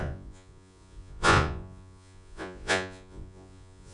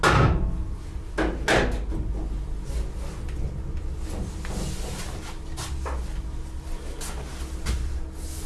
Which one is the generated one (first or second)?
first